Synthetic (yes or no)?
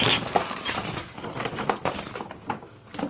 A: no